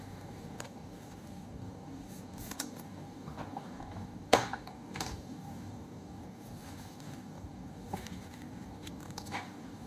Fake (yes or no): yes